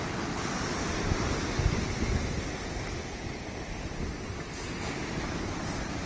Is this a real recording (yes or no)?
yes